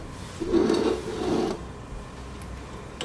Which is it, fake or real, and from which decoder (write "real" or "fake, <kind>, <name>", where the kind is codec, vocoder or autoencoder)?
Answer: real